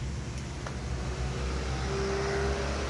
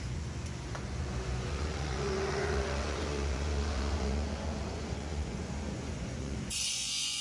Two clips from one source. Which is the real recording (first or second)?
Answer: first